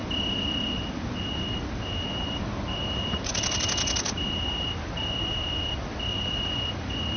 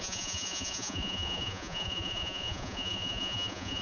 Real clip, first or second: first